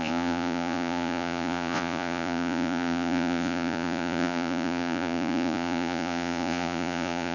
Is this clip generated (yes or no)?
yes